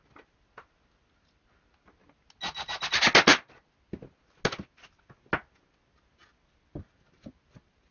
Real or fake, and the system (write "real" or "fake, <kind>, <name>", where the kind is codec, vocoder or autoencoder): real